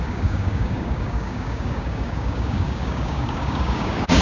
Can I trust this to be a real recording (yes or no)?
no